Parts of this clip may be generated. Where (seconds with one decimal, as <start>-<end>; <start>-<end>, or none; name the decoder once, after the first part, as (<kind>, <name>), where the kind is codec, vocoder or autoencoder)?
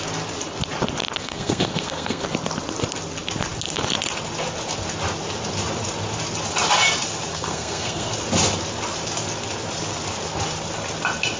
1.2-2.2 (codec, SNAC); 7.3-8.1